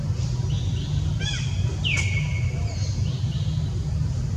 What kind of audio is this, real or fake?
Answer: fake